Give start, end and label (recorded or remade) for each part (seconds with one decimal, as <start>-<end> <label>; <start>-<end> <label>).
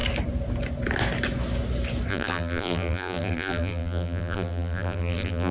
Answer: 0.0-2.1 recorded; 2.1-5.5 remade